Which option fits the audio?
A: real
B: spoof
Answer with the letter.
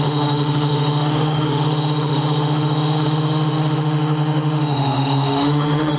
B